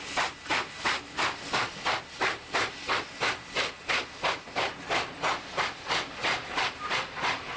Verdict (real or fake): real